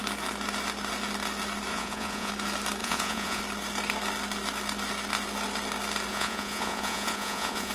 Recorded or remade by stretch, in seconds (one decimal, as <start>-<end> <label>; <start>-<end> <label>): 0.0-1.7 recorded; 1.7-2.3 remade; 2.3-2.8 recorded; 2.8-3.4 remade; 3.4-6.1 recorded; 6.1-7.7 remade